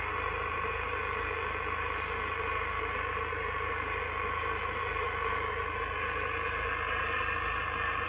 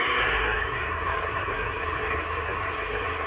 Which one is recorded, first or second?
first